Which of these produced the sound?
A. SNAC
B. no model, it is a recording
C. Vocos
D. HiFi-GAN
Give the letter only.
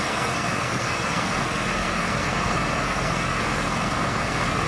A